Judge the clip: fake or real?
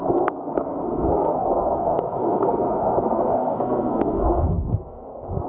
fake